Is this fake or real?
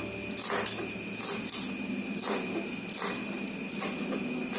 real